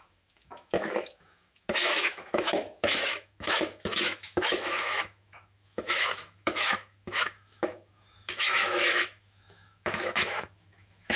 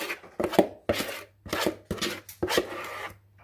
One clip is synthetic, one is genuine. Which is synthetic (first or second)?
first